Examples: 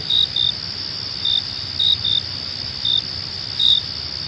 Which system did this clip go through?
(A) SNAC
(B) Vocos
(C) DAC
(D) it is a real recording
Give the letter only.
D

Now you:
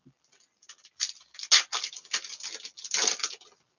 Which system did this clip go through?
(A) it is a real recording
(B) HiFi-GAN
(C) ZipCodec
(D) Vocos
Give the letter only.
A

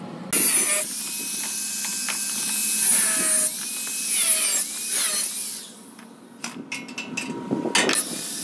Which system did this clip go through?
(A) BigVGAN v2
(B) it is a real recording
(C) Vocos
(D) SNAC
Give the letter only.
B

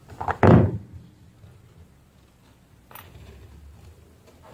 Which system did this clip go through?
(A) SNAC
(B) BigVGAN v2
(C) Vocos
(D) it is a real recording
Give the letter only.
D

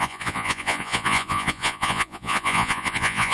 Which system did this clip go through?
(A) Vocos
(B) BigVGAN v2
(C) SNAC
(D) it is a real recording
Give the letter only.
A